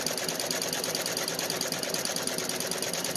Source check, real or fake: real